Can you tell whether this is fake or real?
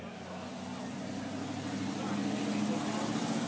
real